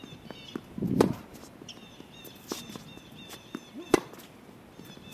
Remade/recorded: recorded